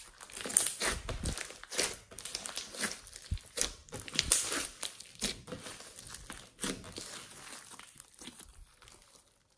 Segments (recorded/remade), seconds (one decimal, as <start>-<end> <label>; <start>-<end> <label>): 0.0-3.8 recorded; 3.8-6.0 remade; 6.0-9.6 recorded